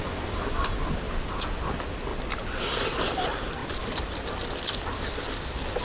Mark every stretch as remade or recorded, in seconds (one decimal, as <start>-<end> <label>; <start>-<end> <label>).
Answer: 0.0-2.1 recorded; 2.1-2.6 remade; 2.6-3.6 recorded; 3.6-4.4 remade; 4.4-5.8 recorded